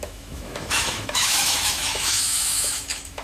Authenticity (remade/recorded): remade